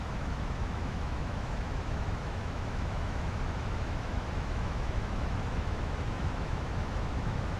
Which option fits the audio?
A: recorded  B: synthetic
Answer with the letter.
B